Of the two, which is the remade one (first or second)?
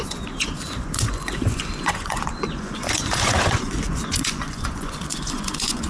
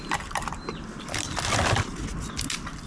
first